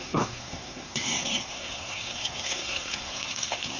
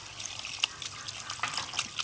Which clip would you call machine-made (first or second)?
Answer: first